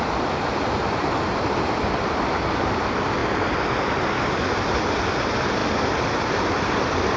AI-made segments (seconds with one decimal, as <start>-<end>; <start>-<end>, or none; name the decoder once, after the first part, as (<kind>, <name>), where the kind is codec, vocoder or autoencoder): none